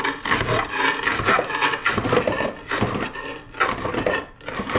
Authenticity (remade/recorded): recorded